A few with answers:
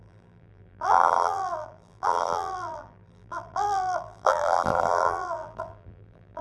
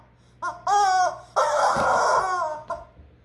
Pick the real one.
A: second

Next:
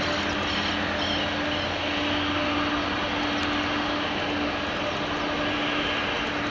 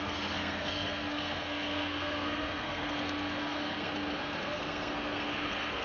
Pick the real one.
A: first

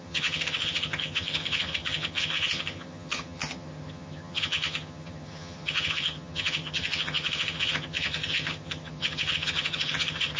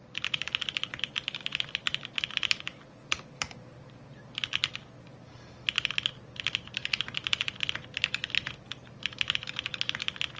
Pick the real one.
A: second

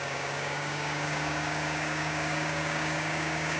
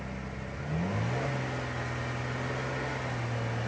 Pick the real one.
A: second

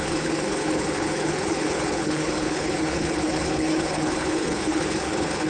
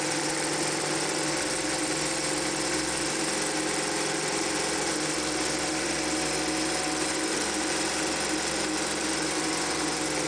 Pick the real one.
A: second